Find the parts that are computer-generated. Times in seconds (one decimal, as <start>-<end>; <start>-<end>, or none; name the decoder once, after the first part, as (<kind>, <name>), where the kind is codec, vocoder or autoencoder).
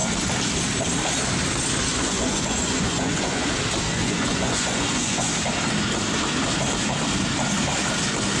1.9-3.5 (vocoder, Vocos); 3.9-5.3